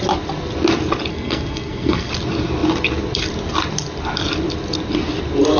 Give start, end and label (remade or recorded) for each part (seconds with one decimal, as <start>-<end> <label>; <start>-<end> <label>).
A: 0.0-1.1 recorded; 1.1-2.1 remade; 2.1-5.6 recorded